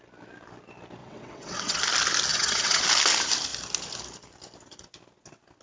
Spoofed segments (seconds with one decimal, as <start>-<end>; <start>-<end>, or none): 1.0-1.8; 2.3-2.8